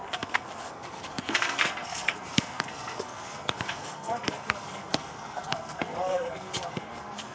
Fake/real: fake